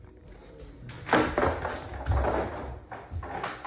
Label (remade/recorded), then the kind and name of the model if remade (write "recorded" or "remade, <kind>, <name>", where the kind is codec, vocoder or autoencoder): recorded